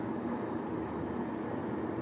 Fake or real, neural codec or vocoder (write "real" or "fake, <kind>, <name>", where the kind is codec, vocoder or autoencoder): real